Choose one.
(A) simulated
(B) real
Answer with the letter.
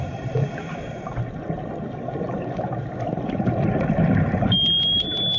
B